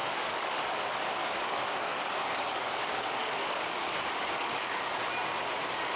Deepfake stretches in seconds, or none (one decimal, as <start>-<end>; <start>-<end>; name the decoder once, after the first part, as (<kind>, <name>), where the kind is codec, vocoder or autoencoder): 0.0-0.7 (codec, DAC); 1.2-4.8